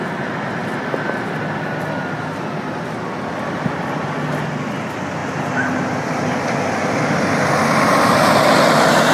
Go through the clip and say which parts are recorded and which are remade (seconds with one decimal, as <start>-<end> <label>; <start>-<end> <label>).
0.0-5.2 recorded; 5.2-5.8 remade; 5.8-9.1 recorded